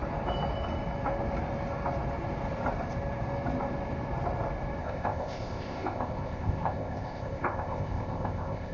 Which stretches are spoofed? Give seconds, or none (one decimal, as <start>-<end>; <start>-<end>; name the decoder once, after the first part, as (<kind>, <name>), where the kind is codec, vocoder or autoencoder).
4.8-8.7 (codec, ZipCodec)